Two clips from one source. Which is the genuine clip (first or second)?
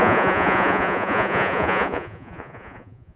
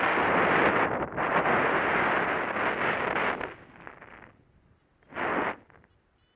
second